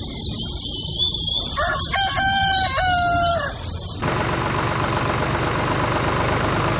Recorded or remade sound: recorded